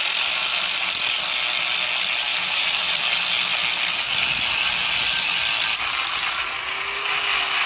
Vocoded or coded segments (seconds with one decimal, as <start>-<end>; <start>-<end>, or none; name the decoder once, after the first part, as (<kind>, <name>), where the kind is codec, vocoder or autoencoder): 2.3-3.0 (vocoder, BigVGAN v2)